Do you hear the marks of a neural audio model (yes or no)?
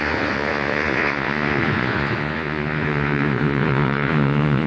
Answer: yes